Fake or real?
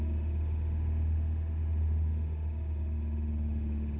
real